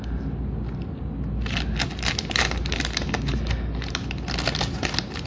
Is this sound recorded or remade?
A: recorded